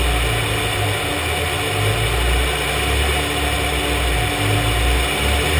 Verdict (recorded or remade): recorded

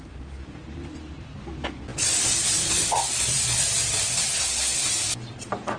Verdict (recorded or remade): recorded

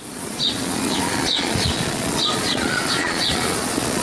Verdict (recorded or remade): remade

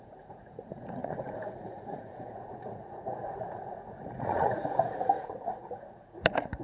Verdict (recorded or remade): remade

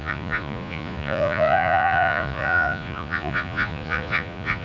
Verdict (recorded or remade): remade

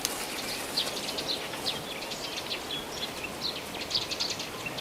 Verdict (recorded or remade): recorded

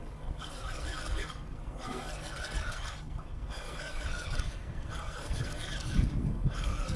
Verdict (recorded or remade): remade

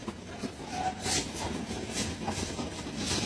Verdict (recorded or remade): recorded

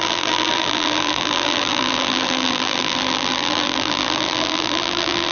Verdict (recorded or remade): remade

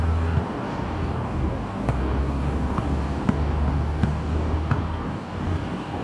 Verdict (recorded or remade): remade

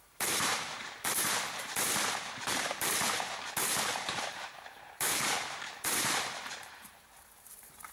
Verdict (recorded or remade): remade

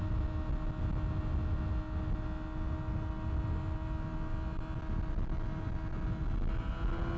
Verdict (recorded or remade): recorded